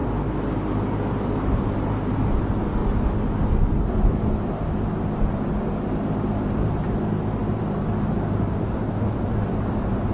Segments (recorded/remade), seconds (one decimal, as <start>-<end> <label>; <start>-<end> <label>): 0.0-2.1 recorded; 2.1-2.8 remade; 2.8-4.8 recorded; 4.8-10.1 remade